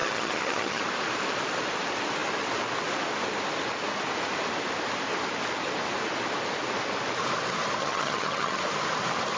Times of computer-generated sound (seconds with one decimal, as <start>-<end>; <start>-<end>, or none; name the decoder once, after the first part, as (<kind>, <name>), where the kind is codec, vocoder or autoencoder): 0.0-0.8 (vocoder, HiFi-GAN); 7.8-8.6